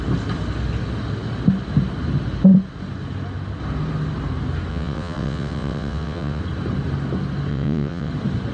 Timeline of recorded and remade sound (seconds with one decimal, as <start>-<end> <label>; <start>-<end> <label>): 0.0-4.7 recorded; 4.7-6.4 remade; 6.4-7.5 recorded; 7.5-8.1 remade; 8.1-8.5 recorded